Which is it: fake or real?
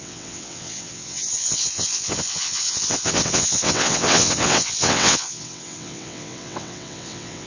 fake